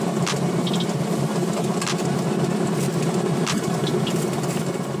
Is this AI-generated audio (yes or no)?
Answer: no